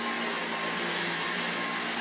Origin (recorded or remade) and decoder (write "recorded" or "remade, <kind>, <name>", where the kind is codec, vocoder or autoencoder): recorded